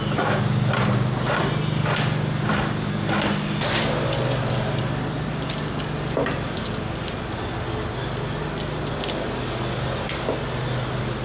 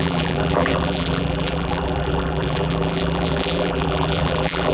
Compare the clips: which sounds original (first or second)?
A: first